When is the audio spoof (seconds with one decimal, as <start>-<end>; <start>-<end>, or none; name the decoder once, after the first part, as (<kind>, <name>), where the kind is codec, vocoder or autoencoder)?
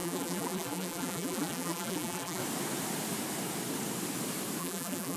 0.0-2.4 (vocoder, BigVGAN v2); 4.6-5.2